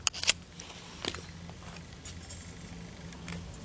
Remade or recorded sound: recorded